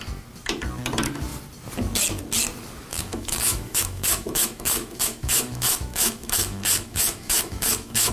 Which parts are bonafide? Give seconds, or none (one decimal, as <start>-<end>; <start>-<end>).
0.0-2.9